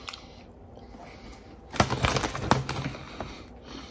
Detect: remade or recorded recorded